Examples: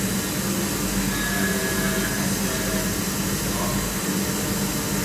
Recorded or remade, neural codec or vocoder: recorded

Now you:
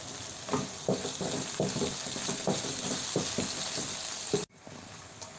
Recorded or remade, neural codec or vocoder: recorded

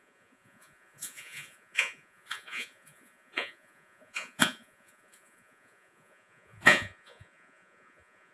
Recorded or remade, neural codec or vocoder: remade, vocoder, Vocos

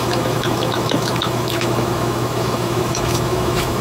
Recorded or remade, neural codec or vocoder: remade, autoencoder, DAC-VAE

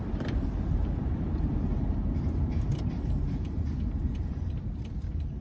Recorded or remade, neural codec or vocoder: remade, vocoder, BigVGAN v2